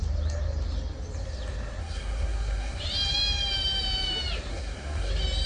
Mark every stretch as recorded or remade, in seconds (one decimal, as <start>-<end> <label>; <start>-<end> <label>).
0.0-1.8 recorded; 1.8-2.8 remade; 2.8-4.5 recorded; 4.5-5.1 remade; 5.1-5.5 recorded